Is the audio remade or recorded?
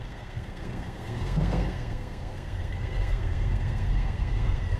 remade